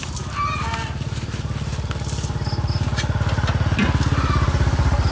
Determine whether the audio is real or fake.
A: real